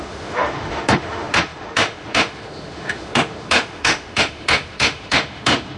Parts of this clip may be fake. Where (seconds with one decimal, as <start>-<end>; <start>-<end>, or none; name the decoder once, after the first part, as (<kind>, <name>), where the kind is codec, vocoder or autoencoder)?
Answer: 0.0-5.8 (autoencoder, DAC-VAE)